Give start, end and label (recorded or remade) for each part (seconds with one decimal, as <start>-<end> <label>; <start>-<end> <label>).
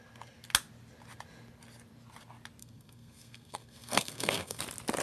0.0-2.6 recorded; 2.6-4.6 remade; 4.6-5.0 recorded